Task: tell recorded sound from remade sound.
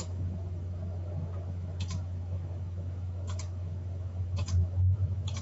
remade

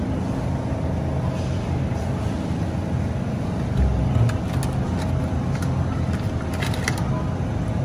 recorded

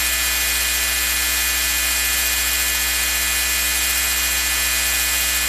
recorded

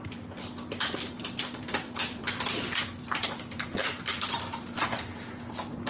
remade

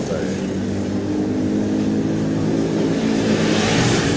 recorded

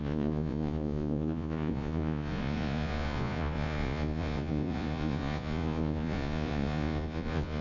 remade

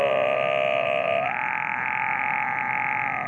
recorded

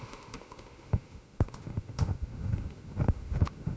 remade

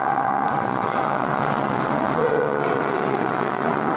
remade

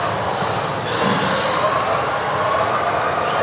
recorded